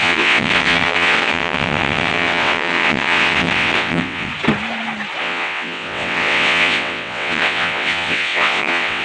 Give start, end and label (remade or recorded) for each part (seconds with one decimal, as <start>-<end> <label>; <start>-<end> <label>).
0.0-4.3 remade; 4.3-5.2 recorded; 5.2-9.0 remade